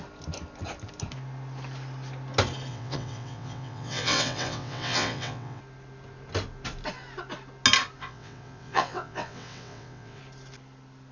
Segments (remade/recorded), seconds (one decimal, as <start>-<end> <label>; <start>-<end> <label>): 0.0-2.7 recorded; 2.7-5.6 remade; 5.6-8.0 recorded; 8.0-10.2 remade; 10.2-11.1 recorded